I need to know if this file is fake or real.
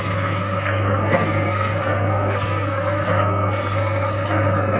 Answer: fake